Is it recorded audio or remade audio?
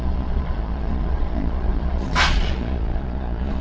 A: remade